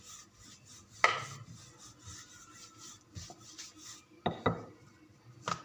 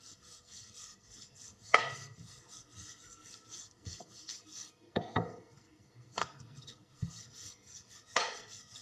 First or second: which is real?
first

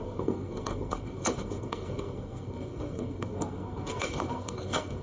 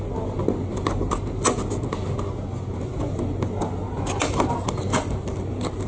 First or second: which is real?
second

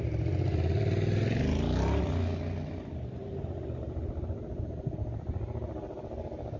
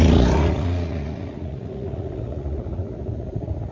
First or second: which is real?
first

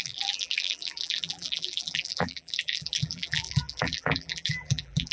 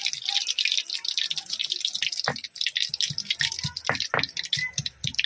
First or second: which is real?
second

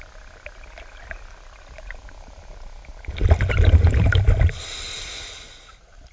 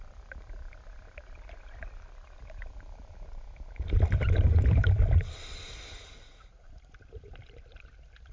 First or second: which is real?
first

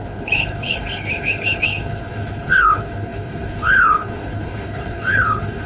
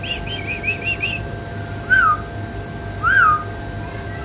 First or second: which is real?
second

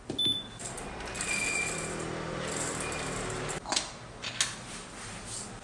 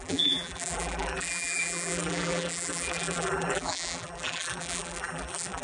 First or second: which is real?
first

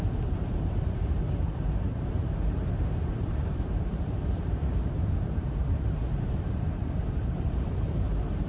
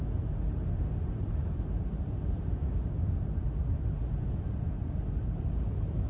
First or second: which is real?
second